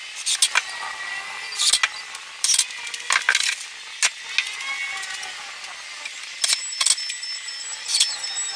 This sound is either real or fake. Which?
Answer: real